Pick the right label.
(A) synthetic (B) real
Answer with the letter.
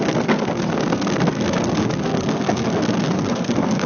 A